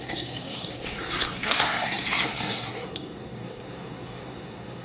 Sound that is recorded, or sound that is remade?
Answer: remade